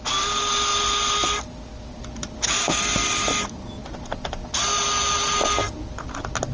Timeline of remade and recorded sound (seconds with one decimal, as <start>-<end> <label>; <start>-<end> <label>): 0.0-6.5 recorded